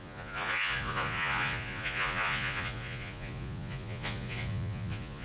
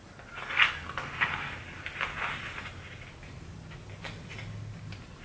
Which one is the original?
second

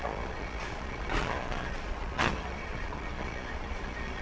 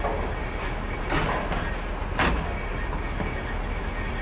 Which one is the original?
second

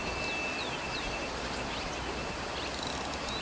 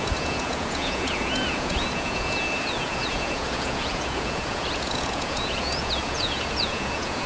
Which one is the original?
first